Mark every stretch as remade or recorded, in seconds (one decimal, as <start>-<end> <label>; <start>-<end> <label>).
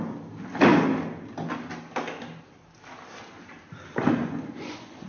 0.0-4.2 recorded; 4.2-5.1 remade